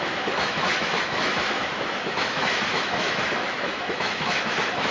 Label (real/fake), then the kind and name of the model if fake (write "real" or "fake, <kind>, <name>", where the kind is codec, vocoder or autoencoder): fake, autoencoder, DAC-VAE